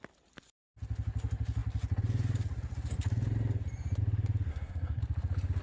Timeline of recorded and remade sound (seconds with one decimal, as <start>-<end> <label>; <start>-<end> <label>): 0.0-4.5 recorded; 4.5-5.0 remade; 5.0-5.6 recorded